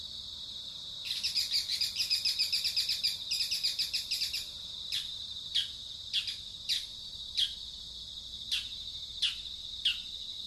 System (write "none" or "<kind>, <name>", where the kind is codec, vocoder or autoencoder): none